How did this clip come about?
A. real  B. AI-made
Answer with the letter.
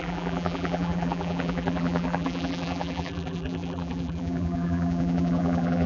B